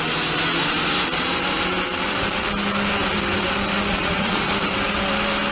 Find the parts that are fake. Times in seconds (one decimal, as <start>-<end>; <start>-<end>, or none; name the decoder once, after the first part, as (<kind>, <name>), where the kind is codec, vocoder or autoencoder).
3.9-4.5 (vocoder, Vocos)